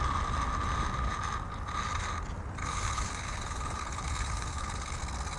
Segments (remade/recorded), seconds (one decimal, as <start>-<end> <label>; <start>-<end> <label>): 0.0-2.6 recorded; 2.6-5.0 remade; 5.0-5.4 recorded